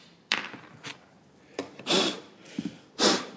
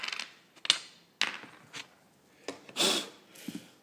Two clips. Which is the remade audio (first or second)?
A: first